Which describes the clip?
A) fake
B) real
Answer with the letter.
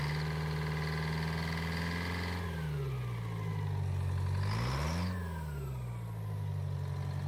B